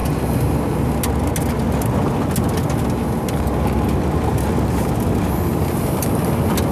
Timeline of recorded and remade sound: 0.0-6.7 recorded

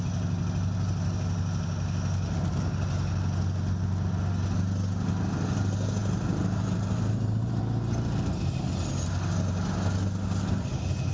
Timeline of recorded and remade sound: 0.0-6.0 recorded; 6.0-7.6 remade; 7.6-11.1 recorded

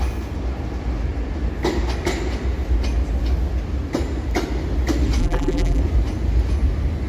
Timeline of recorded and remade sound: 0.0-5.2 recorded; 5.2-5.8 remade; 5.8-7.1 recorded

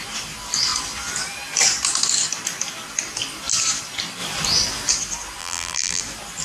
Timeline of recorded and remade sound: 0.0-5.4 recorded; 5.4-6.0 remade; 6.0-6.4 recorded

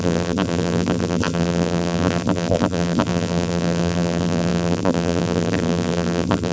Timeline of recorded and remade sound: 0.0-6.5 remade